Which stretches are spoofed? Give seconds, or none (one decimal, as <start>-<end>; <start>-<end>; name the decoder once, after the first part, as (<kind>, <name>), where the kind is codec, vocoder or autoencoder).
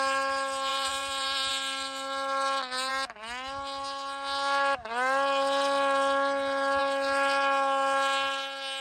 0.7-1.5 (vocoder, BigVGAN v2)